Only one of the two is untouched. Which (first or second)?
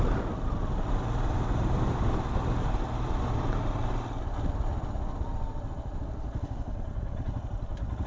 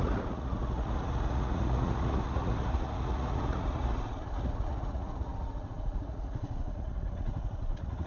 first